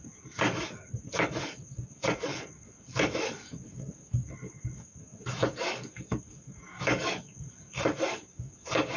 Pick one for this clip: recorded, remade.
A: remade